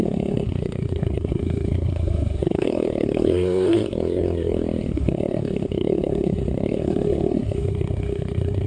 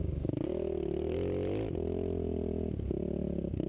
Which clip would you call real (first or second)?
second